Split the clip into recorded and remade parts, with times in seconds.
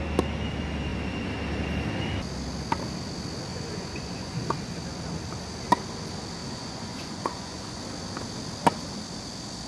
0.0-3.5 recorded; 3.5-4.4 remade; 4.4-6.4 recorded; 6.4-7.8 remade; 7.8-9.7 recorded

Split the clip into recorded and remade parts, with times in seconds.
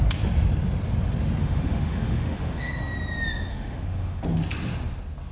0.0-1.4 recorded; 1.4-2.8 remade; 2.8-3.5 recorded; 3.5-4.2 remade; 4.2-5.3 recorded